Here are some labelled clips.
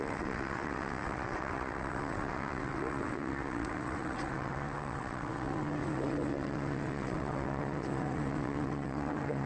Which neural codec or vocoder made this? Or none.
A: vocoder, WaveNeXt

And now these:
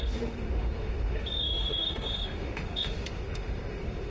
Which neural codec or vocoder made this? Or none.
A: autoencoder, DAC-VAE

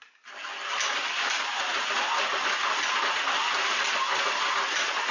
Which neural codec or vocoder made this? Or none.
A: none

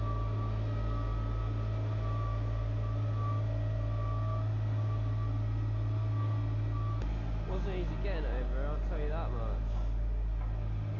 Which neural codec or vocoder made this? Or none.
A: none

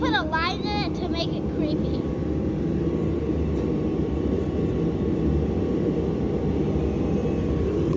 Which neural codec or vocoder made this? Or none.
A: none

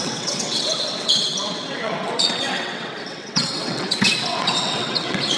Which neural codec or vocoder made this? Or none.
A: vocoder, WaveNeXt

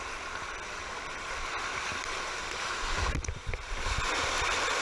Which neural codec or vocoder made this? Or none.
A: none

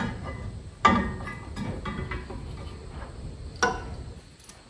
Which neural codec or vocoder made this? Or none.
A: none